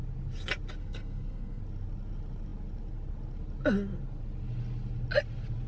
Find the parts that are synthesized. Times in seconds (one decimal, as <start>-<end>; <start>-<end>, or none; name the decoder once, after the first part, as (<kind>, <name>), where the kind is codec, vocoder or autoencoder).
0.8-1.6 (codec, SNAC)